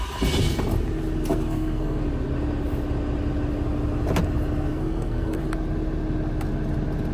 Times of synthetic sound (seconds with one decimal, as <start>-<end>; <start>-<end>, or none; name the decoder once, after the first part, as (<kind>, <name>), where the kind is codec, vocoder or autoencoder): 1.3-2.0 (codec, SNAC); 4.7-5.4